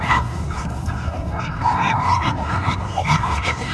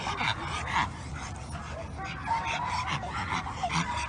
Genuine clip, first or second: second